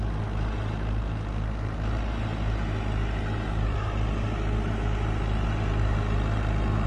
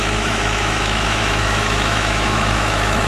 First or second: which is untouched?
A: first